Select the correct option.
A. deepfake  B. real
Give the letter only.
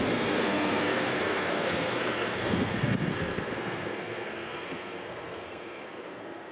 A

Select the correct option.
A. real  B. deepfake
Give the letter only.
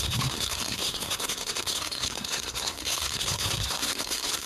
B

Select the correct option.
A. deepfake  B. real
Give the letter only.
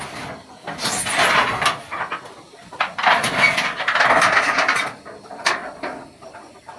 B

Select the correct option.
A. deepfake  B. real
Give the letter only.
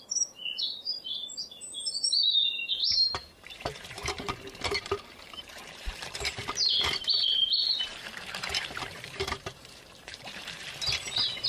A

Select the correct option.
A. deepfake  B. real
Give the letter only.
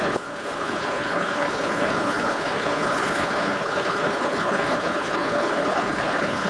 A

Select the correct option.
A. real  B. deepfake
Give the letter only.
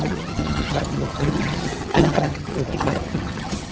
B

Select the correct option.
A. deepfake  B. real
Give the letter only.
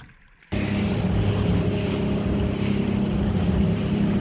B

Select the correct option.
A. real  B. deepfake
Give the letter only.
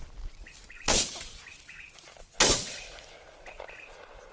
A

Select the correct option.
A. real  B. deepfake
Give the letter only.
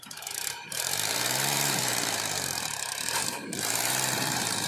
B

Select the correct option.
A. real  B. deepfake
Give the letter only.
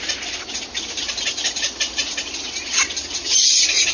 A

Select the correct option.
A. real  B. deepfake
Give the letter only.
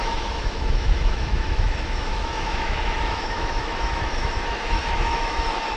B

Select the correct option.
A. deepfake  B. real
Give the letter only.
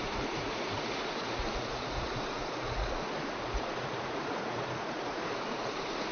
A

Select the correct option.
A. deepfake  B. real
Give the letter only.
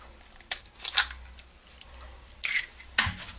B